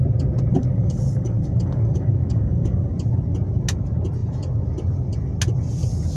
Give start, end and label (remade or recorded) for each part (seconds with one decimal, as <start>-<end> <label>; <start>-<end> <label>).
0.0-0.6 recorded; 0.6-2.9 remade; 2.9-6.2 recorded